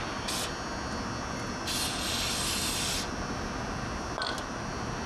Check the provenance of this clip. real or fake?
real